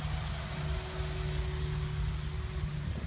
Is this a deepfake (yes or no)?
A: no